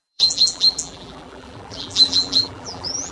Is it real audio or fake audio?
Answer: fake